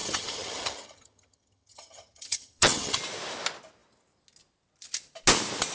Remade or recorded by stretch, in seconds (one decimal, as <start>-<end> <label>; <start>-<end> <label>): 0.0-3.0 remade; 3.0-5.7 recorded